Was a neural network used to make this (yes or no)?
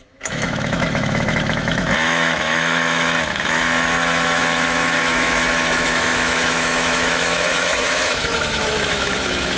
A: yes